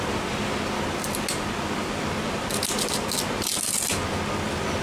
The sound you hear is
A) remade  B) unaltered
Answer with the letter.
B